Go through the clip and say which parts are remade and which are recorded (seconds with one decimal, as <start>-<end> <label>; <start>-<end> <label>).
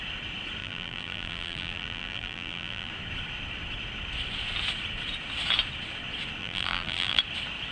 0.0-0.6 recorded; 0.6-2.9 remade; 2.9-6.4 recorded; 6.4-7.2 remade; 7.2-7.7 recorded